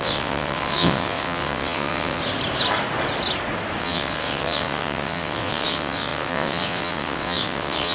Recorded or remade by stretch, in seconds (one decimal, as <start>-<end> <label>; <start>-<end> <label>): 0.0-2.2 remade; 2.2-3.8 recorded; 3.8-7.9 remade